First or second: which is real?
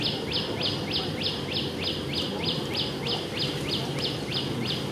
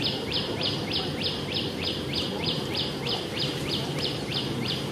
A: first